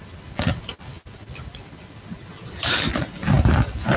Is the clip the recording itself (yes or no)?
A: yes